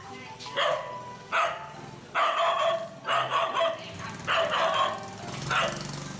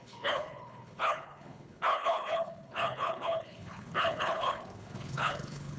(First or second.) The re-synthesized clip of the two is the second